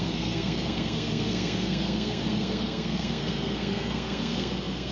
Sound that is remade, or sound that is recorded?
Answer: remade